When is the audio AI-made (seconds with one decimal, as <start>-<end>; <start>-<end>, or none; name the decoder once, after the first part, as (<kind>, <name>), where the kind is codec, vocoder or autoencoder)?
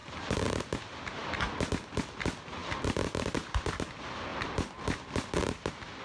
0.0-0.6 (vocoder, BigVGAN v2); 2.6-3.9; 4.3-5.4